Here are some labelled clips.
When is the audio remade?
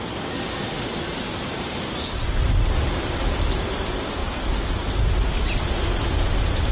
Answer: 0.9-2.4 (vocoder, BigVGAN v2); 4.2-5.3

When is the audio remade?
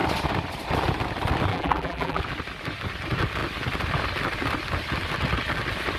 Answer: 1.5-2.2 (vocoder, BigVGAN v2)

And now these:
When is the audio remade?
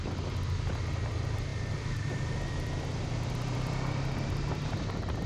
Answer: none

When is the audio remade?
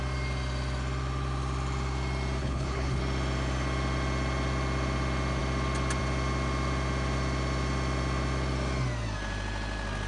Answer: 2.4-3.0 (codec, HILCodec)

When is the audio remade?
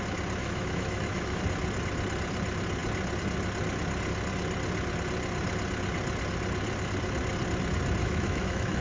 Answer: 0.4-1.4 (autoencoder, DAC-VAE); 8.0-8.8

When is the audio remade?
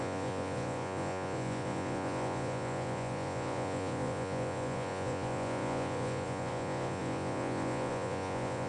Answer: 0.0-8.7 (vocoder, Vocos)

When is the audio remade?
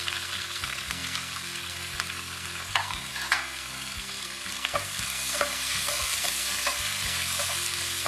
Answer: 0.0-8.1 (codec, SNAC)